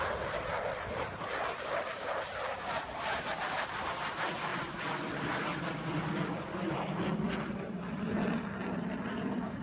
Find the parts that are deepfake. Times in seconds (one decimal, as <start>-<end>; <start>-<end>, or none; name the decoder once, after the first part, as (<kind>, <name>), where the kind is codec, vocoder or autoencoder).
none